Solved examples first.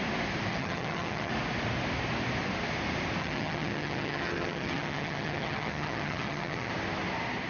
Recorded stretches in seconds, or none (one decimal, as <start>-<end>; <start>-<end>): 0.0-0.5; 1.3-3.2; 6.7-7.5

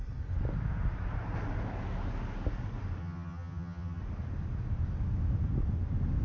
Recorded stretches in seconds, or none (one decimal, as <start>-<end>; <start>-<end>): 0.0-3.0; 4.0-6.2

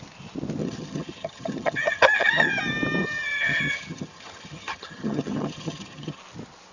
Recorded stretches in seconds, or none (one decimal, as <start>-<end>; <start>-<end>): 0.0-0.6; 2.5-3.0; 6.2-6.7